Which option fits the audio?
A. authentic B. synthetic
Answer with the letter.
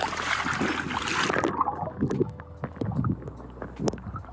A